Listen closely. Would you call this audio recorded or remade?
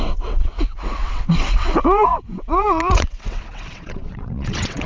remade